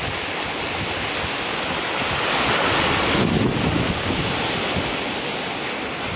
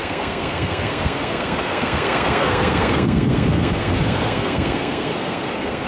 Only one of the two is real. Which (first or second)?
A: first